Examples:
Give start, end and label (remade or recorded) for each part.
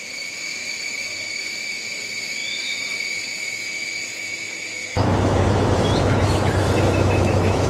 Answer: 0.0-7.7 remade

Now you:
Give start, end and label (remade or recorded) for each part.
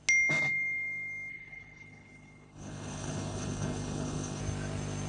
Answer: 0.0-1.3 recorded; 1.3-4.4 remade; 4.4-5.1 recorded